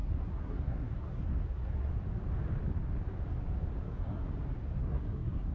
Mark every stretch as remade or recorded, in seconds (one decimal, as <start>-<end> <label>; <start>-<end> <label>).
0.0-1.9 remade; 1.9-3.8 recorded; 3.8-4.2 remade; 4.2-4.8 recorded; 4.8-5.5 remade